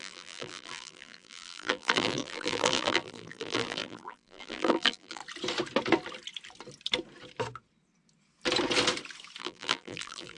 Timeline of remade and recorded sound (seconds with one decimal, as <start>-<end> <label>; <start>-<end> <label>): 0.0-5.2 remade; 5.2-9.4 recorded; 9.4-10.4 remade